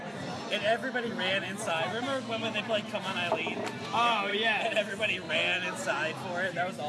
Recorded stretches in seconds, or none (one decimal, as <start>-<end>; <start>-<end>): 0.0-6.9